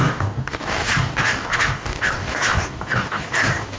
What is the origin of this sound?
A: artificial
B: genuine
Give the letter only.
A